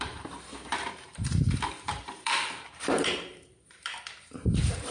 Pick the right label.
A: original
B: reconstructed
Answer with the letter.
B